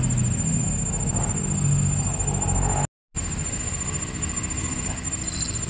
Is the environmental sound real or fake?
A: real